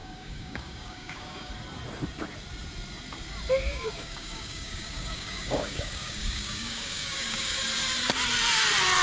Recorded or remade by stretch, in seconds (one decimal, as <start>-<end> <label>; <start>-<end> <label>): 0.0-1.5 remade; 1.5-3.7 recorded; 3.7-7.6 remade; 7.6-9.0 recorded